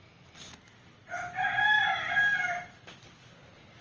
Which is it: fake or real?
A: real